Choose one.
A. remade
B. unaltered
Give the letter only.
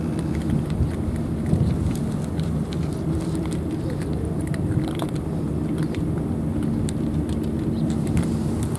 A